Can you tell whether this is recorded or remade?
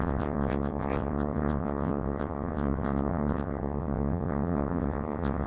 remade